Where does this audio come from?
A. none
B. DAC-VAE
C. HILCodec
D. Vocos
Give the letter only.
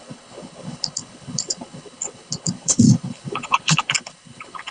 C